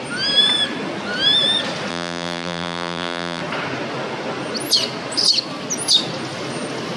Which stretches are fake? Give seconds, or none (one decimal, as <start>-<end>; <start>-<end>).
1.9-3.4